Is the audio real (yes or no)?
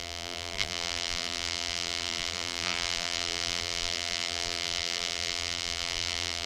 no